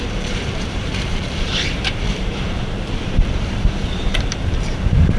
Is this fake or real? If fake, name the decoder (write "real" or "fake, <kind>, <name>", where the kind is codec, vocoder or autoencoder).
fake, vocoder, BigVGAN v2